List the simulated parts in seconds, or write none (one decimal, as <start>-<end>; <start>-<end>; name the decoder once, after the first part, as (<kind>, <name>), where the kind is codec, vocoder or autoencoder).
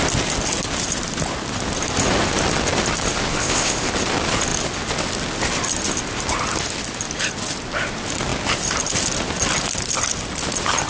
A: 3.4-3.9 (codec, ZipCodec)